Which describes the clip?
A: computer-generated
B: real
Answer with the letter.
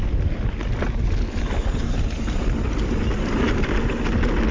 B